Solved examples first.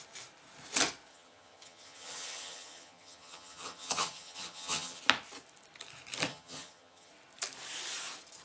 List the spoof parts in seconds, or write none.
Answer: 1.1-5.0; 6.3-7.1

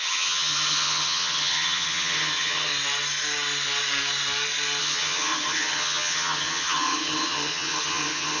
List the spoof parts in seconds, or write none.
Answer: 0.0-2.7; 4.8-8.4